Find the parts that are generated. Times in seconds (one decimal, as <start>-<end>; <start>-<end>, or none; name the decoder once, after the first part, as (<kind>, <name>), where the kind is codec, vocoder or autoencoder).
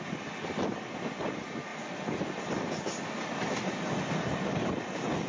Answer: none